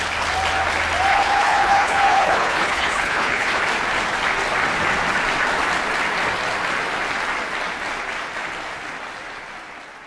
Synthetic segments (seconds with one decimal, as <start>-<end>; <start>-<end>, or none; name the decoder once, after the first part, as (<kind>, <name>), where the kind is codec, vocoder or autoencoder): 1.1-3.6 (codec, HILCodec)